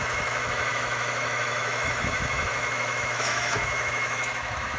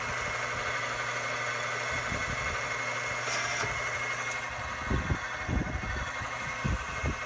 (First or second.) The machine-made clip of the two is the first